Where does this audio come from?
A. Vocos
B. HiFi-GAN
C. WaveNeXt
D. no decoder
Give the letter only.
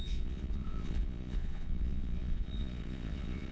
A